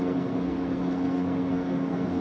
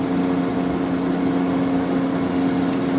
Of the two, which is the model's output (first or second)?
first